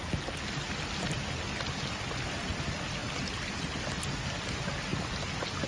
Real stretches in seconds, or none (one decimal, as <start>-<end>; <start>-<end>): 0.0-5.7